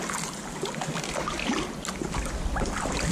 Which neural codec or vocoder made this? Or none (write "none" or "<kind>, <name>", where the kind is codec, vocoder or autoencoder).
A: none